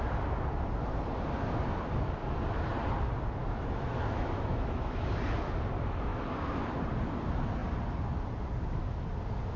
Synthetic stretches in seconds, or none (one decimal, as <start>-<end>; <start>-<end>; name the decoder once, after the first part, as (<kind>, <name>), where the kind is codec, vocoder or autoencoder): 3.4-5.2 (autoencoder, DAC-VAE); 6.1-6.6